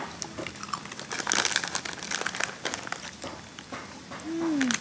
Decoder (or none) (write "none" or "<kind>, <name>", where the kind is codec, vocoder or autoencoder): none